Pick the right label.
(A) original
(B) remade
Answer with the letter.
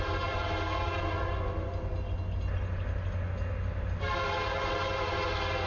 A